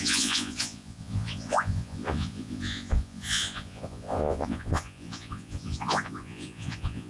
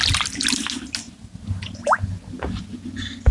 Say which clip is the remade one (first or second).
first